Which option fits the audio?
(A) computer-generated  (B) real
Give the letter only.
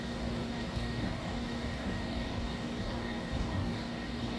A